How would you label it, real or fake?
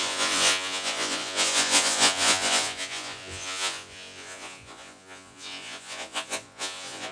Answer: fake